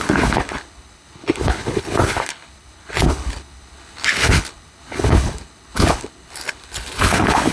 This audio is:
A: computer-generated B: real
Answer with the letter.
A